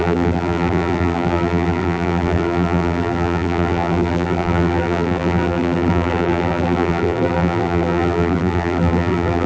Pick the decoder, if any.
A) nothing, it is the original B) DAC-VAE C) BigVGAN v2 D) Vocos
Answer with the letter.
C